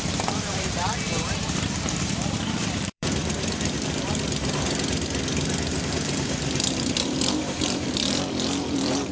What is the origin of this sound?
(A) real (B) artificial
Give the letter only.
B